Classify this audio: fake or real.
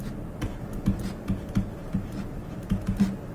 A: real